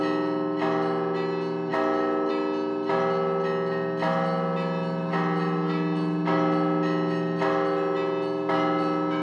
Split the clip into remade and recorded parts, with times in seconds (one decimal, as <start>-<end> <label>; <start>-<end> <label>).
0.0-9.2 recorded